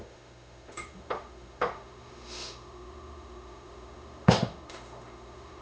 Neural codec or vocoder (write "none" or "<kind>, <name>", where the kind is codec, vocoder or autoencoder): autoencoder, DAC-VAE